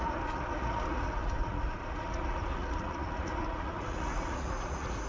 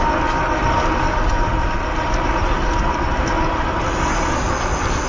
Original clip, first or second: second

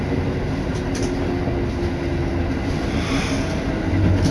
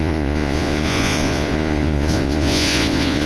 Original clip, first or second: first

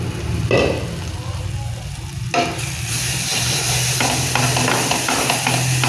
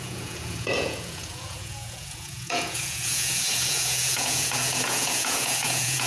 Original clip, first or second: first